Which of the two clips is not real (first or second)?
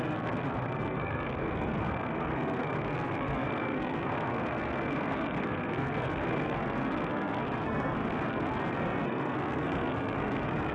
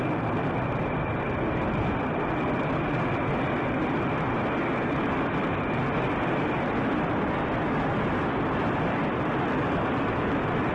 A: first